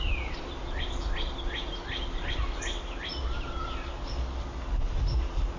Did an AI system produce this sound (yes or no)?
no